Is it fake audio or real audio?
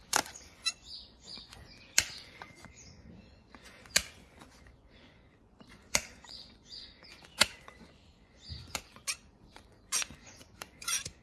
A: fake